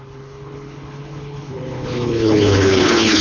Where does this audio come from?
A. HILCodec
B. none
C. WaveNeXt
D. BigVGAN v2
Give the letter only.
A